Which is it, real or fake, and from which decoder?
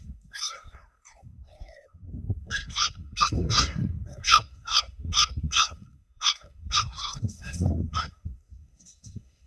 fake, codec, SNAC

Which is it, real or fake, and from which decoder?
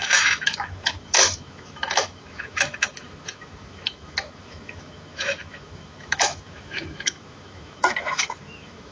fake, autoencoder, DAC-VAE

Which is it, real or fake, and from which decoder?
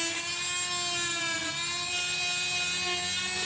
real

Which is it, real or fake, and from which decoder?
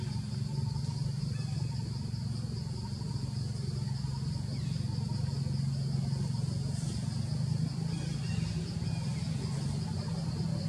real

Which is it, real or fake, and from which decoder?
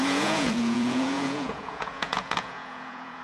fake, vocoder, Vocos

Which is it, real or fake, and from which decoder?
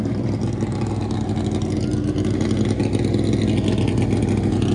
real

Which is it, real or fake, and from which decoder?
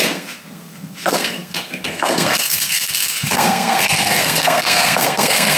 fake, codec, SNAC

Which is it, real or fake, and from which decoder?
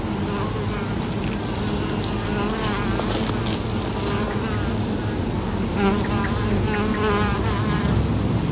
real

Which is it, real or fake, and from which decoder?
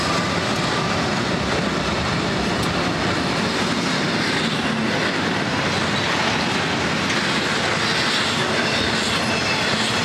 real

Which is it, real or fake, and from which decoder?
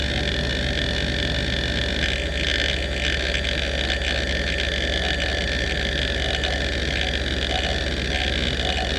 real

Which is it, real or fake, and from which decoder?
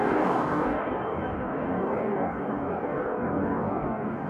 fake, codec, DAC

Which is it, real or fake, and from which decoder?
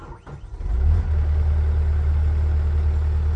real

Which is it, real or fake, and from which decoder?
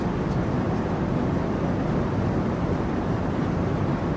real